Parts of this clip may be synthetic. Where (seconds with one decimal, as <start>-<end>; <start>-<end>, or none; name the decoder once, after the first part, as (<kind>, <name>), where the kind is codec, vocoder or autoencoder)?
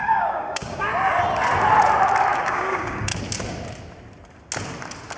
0.0-0.9 (codec, DAC); 2.4-3.1